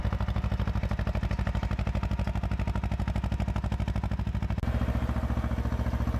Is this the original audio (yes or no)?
yes